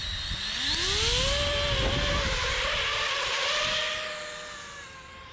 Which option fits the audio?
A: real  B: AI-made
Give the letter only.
A